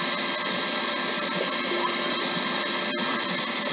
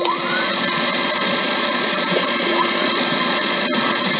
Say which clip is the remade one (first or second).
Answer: second